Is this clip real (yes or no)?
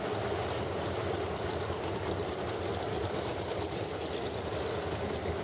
yes